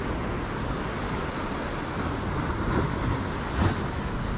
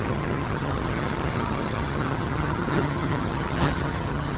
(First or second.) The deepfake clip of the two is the second